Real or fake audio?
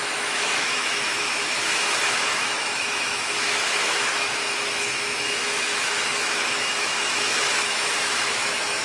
fake